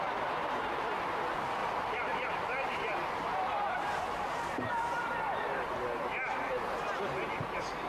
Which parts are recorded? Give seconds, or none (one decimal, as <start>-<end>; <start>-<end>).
0.0-1.6; 4.7-7.9